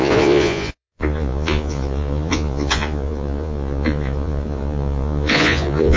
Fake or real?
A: fake